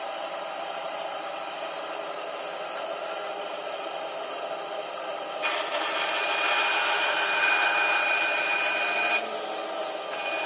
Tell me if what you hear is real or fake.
real